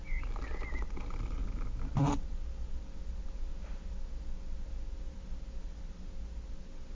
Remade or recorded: recorded